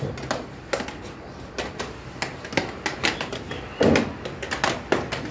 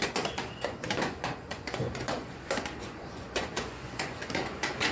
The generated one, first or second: second